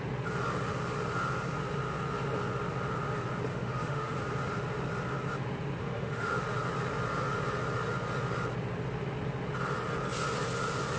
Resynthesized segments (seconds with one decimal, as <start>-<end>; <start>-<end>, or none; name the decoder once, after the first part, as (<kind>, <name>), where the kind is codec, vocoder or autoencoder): 3.5-4.2 (autoencoder, DAC-VAE); 5.8-6.4

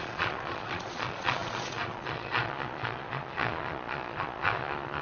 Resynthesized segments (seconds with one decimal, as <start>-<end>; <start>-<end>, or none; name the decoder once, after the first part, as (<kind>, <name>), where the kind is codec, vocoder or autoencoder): 0.0-5.0 (vocoder, Vocos)

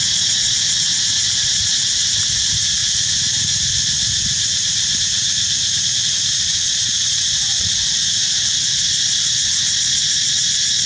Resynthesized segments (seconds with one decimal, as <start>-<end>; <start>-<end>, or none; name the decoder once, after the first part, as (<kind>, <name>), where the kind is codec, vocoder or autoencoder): 0.0-10.9 (vocoder, BigVGAN v2)

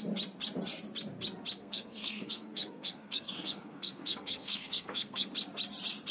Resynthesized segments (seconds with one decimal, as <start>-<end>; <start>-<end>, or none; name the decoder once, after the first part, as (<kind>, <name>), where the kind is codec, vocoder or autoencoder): 1.6-5.3 (codec, SNAC)

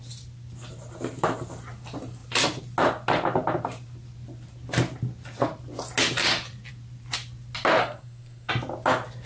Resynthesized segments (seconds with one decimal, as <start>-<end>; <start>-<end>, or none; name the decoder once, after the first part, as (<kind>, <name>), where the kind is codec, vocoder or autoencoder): 7.8-8.5 (codec, SNAC)

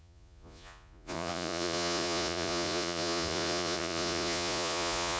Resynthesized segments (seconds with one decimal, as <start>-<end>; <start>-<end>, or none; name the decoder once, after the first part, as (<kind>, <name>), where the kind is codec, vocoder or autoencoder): 0.0-5.2 (vocoder, Vocos)

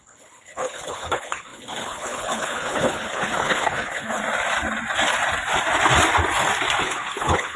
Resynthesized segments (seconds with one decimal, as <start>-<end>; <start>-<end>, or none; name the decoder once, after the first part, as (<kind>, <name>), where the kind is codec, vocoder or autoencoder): 0.0-4.2 (codec, HILCodec); 6.8-7.6

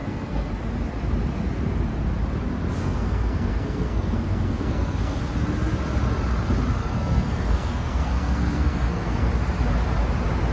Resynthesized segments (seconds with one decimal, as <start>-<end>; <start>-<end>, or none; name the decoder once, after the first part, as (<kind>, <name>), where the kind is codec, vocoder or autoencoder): 0.0-0.5 (codec, SNAC); 2.8-5.2; 6.8-9.3